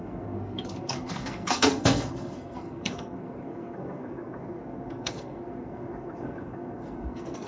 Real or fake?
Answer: fake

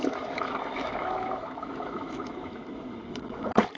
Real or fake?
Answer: fake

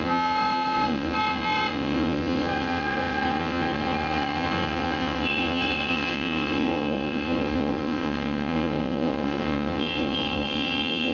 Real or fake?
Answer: fake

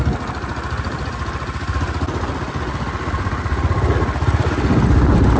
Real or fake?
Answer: real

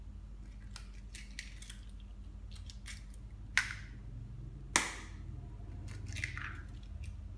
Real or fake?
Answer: real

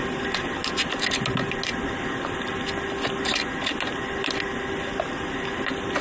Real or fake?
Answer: real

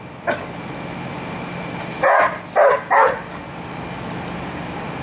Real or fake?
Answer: real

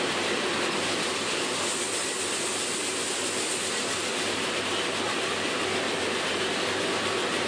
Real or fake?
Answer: fake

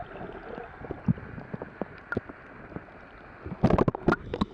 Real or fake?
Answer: real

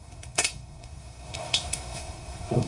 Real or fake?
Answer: fake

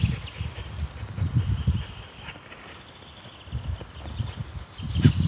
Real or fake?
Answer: real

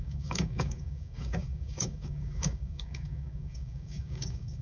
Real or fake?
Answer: fake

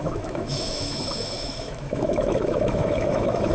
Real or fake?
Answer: fake